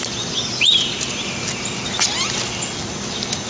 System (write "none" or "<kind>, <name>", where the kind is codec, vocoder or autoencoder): none